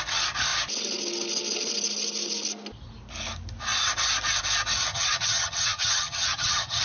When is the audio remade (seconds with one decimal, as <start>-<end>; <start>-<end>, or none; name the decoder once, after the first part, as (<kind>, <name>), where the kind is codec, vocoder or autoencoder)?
4.9-6.8 (vocoder, HiFi-GAN)